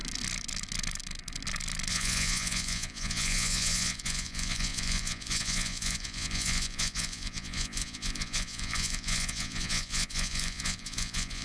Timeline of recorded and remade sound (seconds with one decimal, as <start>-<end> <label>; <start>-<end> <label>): 0.0-1.9 recorded; 1.9-11.4 remade